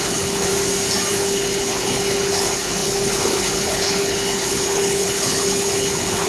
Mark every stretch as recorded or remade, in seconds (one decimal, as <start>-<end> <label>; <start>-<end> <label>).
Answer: 0.0-0.5 remade; 0.5-1.1 recorded; 1.1-6.3 remade